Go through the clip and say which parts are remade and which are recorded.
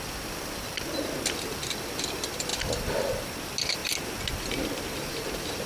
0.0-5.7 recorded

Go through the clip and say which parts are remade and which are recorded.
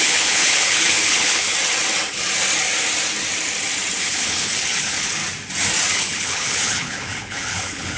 0.0-1.5 remade; 1.5-4.0 recorded; 4.0-5.2 remade; 5.2-5.9 recorded; 5.9-8.0 remade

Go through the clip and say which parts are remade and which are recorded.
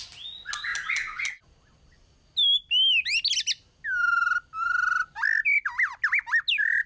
0.0-6.9 recorded